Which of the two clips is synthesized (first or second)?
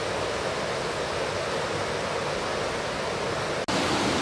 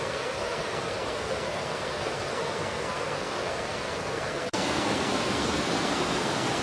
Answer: second